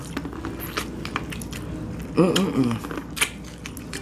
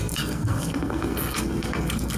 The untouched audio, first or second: first